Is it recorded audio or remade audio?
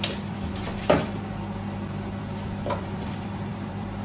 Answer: remade